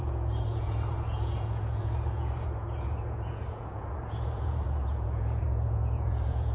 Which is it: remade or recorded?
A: remade